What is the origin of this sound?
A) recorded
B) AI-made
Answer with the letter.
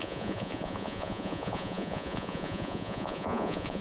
B